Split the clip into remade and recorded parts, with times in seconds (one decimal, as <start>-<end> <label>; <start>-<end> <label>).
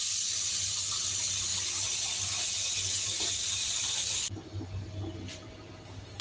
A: 0.0-6.2 recorded